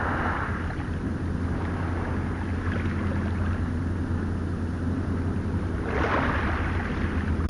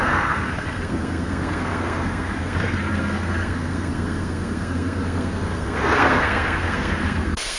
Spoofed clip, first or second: second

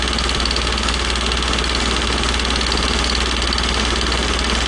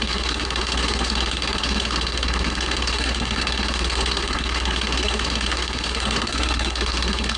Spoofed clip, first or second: second